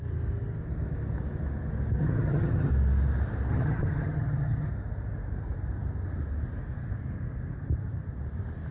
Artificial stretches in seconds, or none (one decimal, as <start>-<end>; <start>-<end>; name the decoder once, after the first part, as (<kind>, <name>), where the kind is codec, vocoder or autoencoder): 2.0-2.7 (vocoder, HiFi-GAN); 3.5-4.7

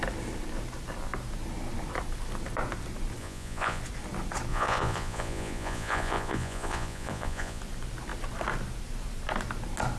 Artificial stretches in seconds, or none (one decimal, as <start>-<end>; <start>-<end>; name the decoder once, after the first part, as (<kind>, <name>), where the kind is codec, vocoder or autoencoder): 3.2-3.8 (vocoder, Vocos); 4.5-7.6

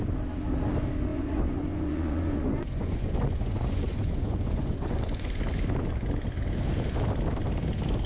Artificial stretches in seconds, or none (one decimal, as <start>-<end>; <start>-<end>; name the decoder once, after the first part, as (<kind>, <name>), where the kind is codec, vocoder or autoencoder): 1.1-5.4 (vocoder, Vocos)